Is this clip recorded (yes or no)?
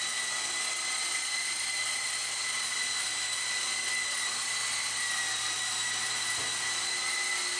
yes